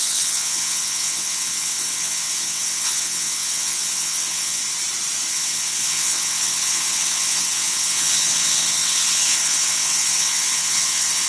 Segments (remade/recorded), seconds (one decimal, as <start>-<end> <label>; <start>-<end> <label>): 0.0-4.6 remade; 4.6-5.3 recorded; 5.3-11.3 remade